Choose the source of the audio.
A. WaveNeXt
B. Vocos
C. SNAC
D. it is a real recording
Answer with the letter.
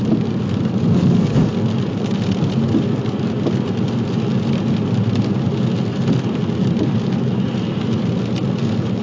D